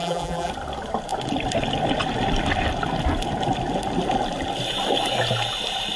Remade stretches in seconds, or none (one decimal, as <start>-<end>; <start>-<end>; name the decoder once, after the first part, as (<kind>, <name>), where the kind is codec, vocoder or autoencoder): 0.0-0.5 (vocoder, BigVGAN v2)